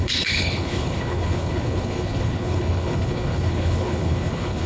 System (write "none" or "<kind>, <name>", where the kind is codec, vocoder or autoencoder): codec, HILCodec